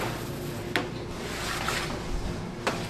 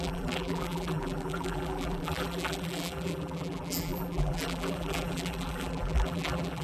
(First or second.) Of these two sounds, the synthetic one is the second